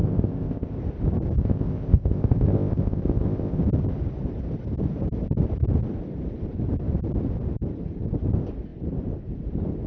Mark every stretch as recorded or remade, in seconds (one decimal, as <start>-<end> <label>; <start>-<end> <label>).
0.0-0.8 remade; 0.8-1.4 recorded; 1.4-3.6 remade; 3.6-9.9 recorded